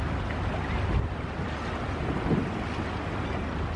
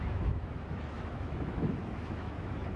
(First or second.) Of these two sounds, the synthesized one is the second